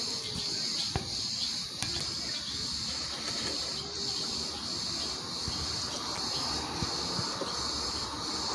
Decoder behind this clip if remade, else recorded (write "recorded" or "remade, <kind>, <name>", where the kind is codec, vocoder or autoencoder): recorded